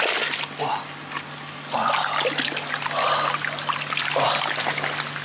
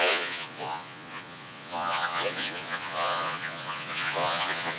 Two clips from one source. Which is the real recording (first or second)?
first